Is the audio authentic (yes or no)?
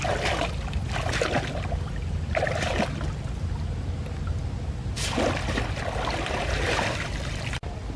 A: yes